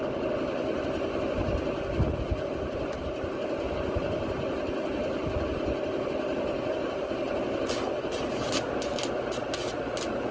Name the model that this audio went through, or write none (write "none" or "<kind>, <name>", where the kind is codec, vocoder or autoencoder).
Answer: none